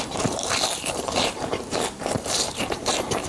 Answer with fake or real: fake